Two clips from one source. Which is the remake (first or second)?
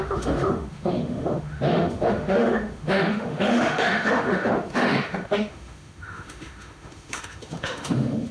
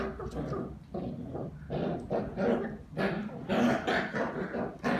first